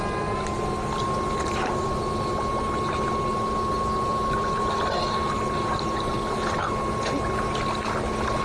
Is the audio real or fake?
real